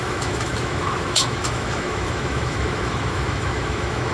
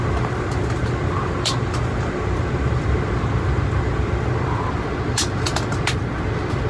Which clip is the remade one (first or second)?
first